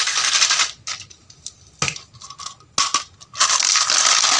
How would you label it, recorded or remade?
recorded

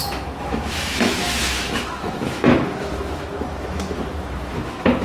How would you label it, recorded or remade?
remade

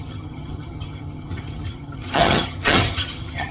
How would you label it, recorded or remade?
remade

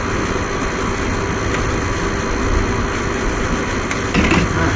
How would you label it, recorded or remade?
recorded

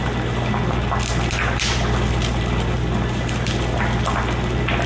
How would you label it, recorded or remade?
recorded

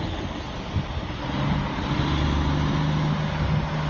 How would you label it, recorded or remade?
recorded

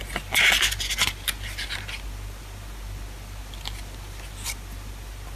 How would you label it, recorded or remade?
recorded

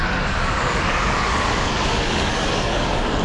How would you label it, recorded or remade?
remade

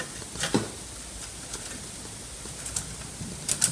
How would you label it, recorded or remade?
recorded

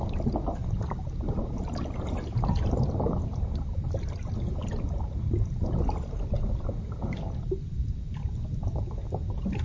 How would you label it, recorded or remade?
recorded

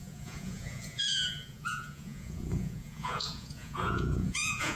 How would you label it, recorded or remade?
remade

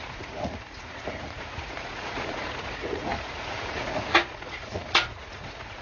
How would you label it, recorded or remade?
remade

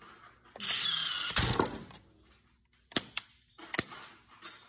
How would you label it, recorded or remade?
recorded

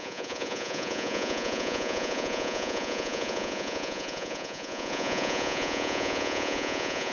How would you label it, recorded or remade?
remade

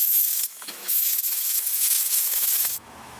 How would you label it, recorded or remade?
remade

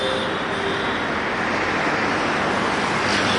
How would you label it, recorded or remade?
recorded